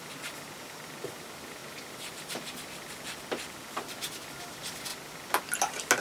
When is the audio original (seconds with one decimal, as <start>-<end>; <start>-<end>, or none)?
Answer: 0.0-6.0